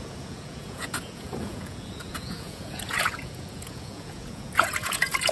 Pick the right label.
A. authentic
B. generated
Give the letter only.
B